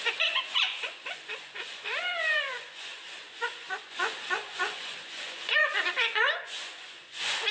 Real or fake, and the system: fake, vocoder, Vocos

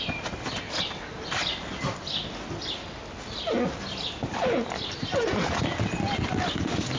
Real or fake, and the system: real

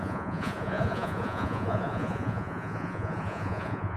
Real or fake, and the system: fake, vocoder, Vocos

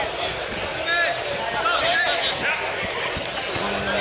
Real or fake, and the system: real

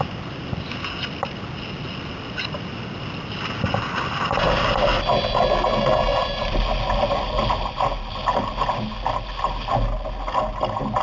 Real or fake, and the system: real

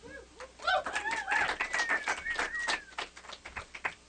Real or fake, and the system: real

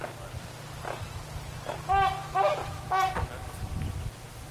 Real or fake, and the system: real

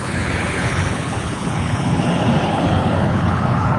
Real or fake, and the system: fake, codec, HILCodec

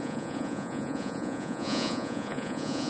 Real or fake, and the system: fake, vocoder, Vocos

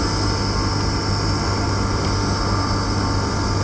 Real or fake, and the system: real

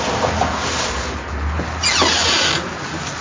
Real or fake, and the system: real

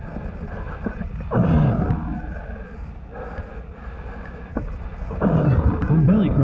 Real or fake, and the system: real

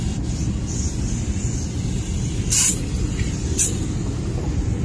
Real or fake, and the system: real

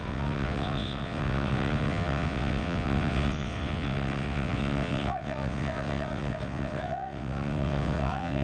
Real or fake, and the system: fake, vocoder, WaveNeXt